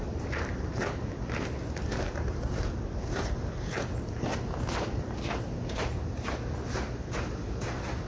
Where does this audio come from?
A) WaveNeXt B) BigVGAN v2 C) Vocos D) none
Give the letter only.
D